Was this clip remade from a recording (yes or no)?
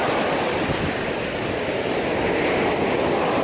no